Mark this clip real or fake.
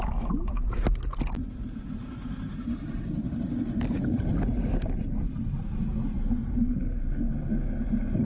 real